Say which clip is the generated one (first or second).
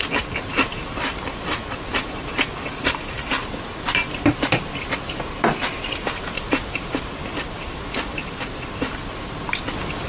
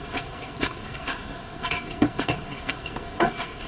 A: second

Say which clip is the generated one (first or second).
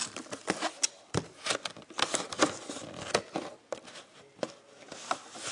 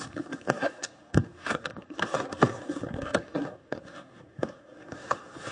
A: second